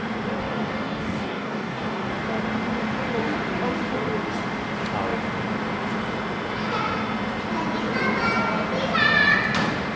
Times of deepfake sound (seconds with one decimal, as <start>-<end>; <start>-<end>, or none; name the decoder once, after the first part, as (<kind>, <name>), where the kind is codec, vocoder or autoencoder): 0.4-2.1 (codec, DAC)

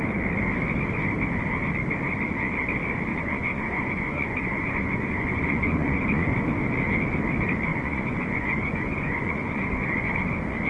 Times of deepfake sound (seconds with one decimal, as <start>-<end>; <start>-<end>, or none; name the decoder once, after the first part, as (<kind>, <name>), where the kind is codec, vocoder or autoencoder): 3.1-6.3 (vocoder, Vocos); 7.7-10.1

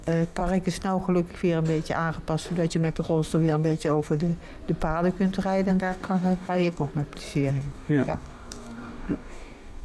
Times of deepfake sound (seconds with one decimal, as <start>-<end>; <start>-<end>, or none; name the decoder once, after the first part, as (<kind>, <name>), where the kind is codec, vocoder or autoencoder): 0.0-0.4 (codec, DAC); 2.7-4.3; 5.7-6.9; 7.5-9.8